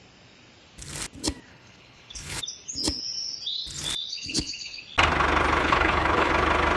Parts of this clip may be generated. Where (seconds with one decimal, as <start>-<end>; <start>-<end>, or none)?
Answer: 1.5-2.4; 4.1-4.8; 5.6-6.3